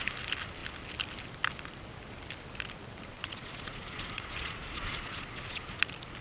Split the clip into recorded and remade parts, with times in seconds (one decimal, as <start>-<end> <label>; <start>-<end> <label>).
0.0-3.1 recorded; 3.1-5.8 remade; 5.8-6.2 recorded